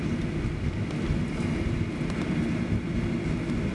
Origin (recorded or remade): recorded